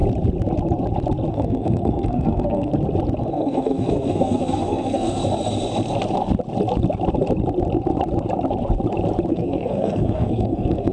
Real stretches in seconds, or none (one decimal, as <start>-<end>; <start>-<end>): 0.0-1.3; 2.7-3.3; 5.2-9.3